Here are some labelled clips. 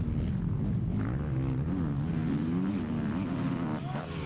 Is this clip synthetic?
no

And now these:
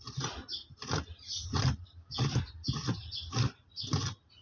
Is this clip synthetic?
no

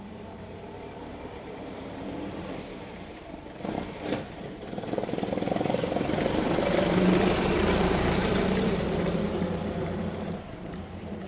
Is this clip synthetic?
yes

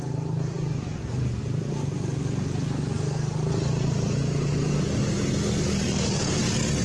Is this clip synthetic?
no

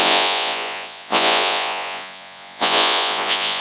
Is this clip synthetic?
yes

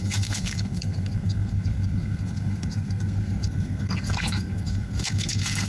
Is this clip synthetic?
yes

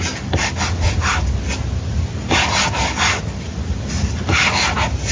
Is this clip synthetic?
no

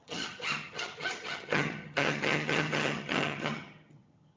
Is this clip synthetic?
yes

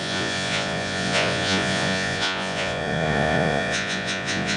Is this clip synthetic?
yes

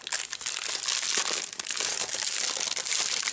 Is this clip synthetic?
no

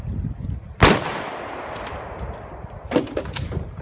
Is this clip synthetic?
no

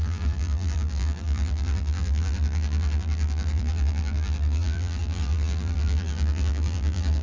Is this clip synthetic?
yes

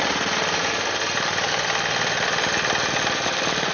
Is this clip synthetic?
no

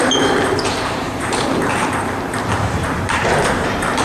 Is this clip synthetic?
yes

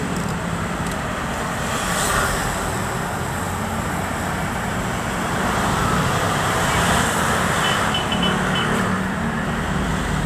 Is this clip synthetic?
yes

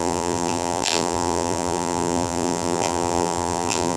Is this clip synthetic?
yes